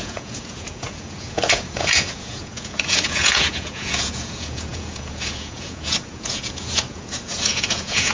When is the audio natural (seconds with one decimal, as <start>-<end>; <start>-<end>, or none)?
none

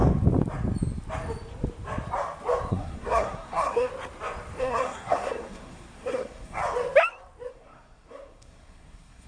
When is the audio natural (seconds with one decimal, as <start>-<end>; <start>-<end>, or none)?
0.0-2.7; 3.9-4.6; 6.6-7.5

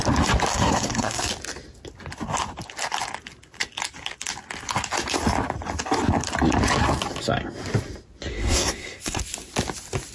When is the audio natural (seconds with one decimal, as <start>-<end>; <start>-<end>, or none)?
0.0-0.5; 1.3-8.3; 9.2-10.1

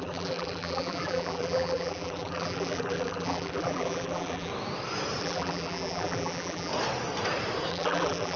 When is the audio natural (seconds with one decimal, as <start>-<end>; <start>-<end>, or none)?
4.5-5.2; 6.7-7.7

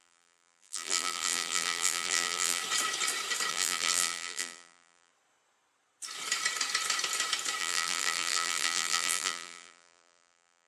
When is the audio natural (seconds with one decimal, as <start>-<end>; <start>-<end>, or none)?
2.6-3.5; 5.1-7.6

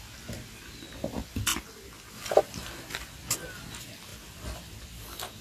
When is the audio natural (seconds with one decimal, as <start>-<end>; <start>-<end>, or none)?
0.0-5.4

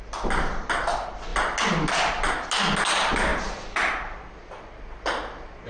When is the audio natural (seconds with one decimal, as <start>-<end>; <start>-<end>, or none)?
0.0-5.7